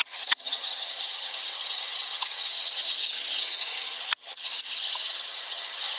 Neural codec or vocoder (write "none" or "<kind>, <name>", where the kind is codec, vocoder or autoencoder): vocoder, HiFi-GAN